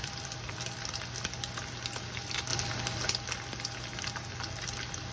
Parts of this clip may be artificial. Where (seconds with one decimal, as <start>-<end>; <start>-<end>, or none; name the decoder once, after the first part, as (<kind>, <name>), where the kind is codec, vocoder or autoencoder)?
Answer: 0.0-0.9 (vocoder, BigVGAN v2)